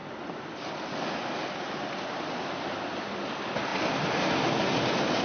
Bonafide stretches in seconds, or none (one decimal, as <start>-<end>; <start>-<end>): 0.0-5.2